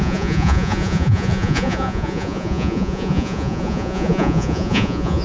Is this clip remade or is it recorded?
remade